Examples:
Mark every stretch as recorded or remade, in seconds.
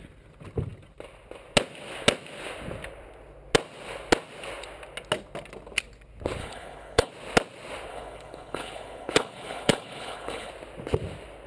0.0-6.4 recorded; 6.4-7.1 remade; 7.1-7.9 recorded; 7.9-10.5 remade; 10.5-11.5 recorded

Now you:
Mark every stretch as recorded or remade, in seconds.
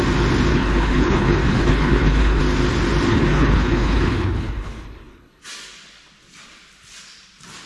0.0-0.5 recorded; 0.5-2.4 remade; 2.4-3.1 recorded; 3.1-5.4 remade; 5.4-7.7 recorded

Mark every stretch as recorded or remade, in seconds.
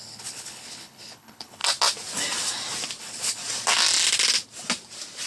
0.0-1.6 remade; 1.6-3.0 recorded; 3.0-3.4 remade; 3.4-5.3 recorded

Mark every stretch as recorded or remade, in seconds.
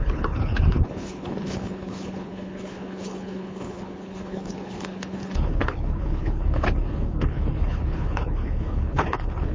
0.0-9.5 remade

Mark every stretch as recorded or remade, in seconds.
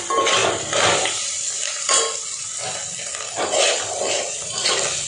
0.0-5.1 recorded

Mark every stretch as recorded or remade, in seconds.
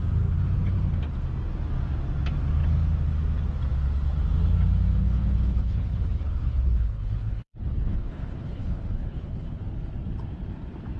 0.0-5.0 recorded; 5.0-9.6 remade; 9.6-11.0 recorded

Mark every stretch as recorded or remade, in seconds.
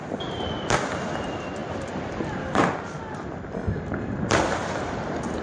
0.0-5.4 recorded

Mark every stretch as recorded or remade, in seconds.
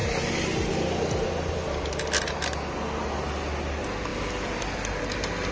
0.0-5.5 recorded